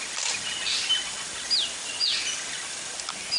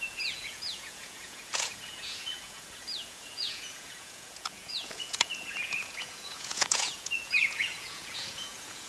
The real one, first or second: first